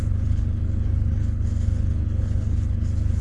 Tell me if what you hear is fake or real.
fake